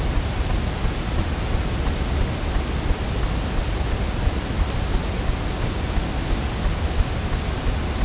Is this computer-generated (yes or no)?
no